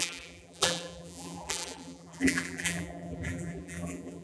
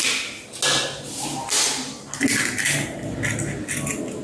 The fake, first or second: first